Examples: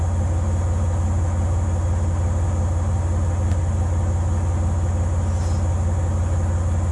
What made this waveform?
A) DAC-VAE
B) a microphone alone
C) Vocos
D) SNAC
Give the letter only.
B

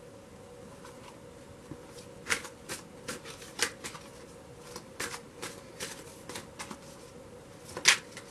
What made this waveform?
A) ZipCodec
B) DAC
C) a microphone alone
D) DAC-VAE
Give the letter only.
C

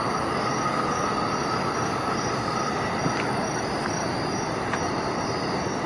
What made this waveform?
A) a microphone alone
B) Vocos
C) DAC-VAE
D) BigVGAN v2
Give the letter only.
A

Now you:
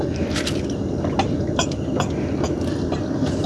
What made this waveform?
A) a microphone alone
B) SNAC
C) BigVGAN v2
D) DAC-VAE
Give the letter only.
A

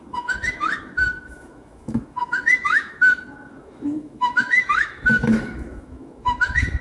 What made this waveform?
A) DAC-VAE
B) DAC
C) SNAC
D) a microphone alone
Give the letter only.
A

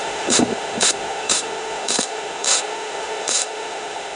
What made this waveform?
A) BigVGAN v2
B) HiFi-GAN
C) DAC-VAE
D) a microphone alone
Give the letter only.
C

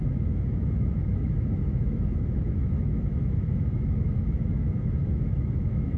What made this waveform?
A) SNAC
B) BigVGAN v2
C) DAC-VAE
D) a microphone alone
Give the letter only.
C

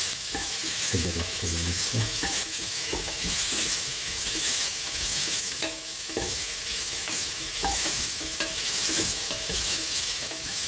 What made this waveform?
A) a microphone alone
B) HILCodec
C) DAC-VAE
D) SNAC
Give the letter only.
C